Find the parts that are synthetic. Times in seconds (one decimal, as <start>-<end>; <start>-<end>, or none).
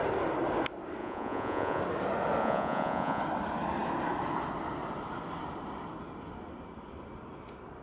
1.0-1.8; 2.4-3.2